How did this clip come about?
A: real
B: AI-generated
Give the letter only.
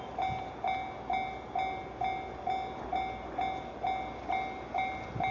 A